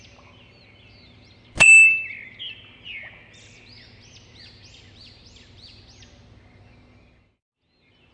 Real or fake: real